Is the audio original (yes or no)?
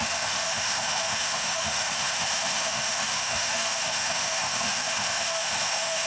no